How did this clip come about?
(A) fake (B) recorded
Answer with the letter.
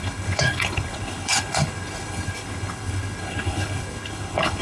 A